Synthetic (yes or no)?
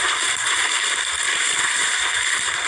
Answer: yes